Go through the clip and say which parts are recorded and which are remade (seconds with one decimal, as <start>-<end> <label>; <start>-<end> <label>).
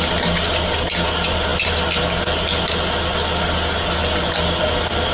0.0-5.1 recorded